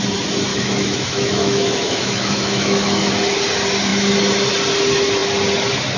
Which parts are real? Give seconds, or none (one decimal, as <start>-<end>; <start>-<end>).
0.0-0.5; 3.1-6.0